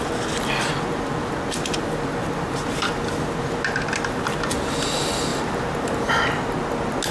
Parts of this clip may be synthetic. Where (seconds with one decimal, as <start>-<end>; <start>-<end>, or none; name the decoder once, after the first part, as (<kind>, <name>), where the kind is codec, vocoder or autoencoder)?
2.2-2.9 (vocoder, BigVGAN v2); 5.3-6.1